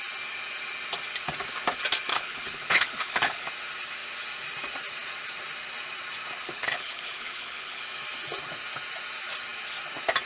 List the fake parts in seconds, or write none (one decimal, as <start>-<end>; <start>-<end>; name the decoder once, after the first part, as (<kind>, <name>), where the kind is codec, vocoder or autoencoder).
2.1-3.5 (codec, HILCodec); 6.4-7.8